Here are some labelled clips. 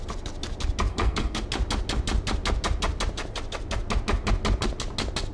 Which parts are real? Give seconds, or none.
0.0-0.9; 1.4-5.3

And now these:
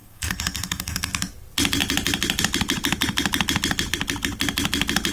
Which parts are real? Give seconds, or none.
1.1-5.1

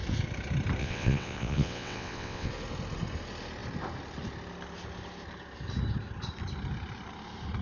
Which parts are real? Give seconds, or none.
0.0-0.8; 2.5-7.6

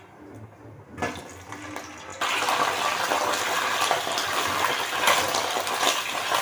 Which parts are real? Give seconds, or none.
0.0-6.4

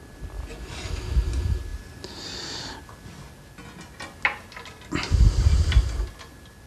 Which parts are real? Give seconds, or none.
0.0-6.7